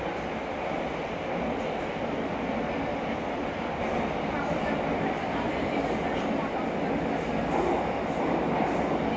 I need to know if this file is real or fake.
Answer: real